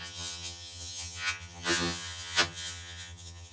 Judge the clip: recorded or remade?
remade